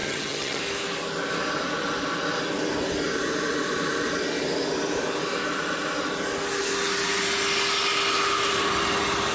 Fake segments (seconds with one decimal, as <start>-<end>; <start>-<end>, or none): 0.0-0.6